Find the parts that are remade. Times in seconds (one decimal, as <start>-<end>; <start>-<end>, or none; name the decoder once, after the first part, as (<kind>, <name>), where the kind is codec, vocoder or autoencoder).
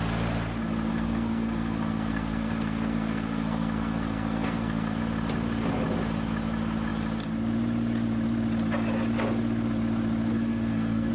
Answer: 0.9-5.0 (codec, SNAC); 10.3-11.1